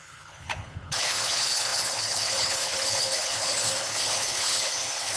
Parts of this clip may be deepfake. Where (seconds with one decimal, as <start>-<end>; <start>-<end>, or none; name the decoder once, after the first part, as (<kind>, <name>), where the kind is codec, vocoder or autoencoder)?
0.0-5.2 (codec, HILCodec)